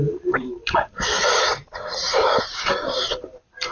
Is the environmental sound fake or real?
fake